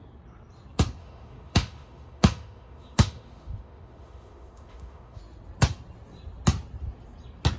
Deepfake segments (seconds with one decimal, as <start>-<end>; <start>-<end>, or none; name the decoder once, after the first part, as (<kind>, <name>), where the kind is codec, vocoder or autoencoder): 1.0-5.2 (autoencoder, DAC-VAE)